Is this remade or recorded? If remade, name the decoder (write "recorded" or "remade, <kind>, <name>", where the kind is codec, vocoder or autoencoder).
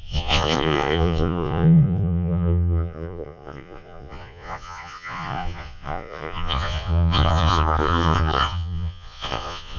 remade, vocoder, Vocos